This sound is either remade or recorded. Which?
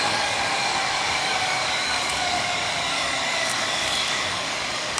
remade